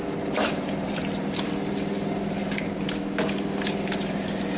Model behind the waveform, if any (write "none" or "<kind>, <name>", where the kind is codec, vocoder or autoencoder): none